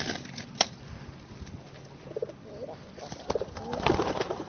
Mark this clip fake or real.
real